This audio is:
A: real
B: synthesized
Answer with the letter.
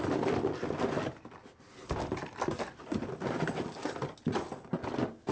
A